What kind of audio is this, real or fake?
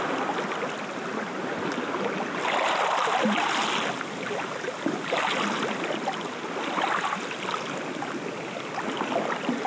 real